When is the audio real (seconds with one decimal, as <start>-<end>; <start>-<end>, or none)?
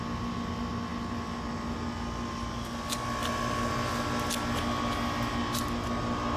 0.0-6.4